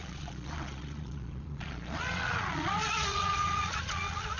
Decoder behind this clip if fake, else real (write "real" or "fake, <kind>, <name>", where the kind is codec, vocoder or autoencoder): fake, vocoder, Vocos